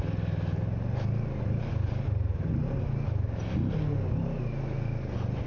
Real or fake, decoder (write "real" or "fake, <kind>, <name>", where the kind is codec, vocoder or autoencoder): real